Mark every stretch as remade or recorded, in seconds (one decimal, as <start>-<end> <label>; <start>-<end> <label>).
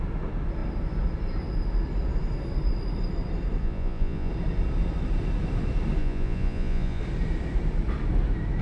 0.0-3.6 recorded; 3.6-4.3 remade; 4.3-6.0 recorded; 6.0-7.0 remade; 7.0-8.6 recorded